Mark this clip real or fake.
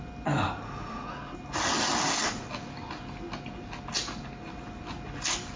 real